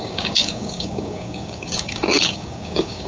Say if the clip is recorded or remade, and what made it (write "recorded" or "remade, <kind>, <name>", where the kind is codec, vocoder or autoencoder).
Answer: remade, codec, DAC